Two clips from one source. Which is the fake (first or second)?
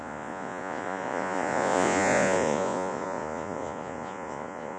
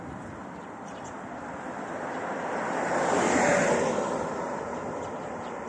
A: first